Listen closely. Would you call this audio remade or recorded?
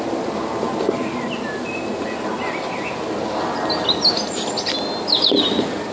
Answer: recorded